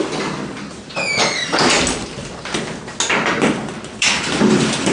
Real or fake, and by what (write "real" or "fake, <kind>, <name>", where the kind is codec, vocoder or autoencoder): real